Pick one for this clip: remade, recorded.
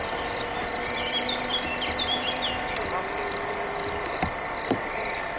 recorded